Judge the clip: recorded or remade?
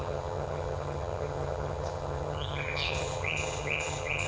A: remade